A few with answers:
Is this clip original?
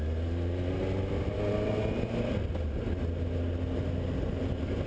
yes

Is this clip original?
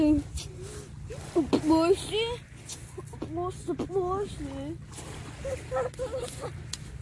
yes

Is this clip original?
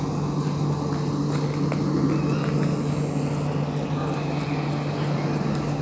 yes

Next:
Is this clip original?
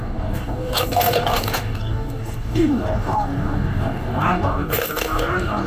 no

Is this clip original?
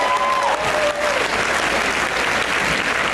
yes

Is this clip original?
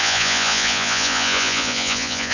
no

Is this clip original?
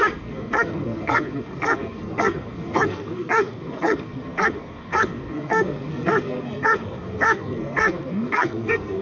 no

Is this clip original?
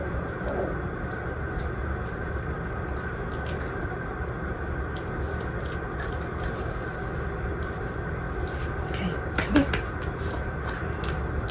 yes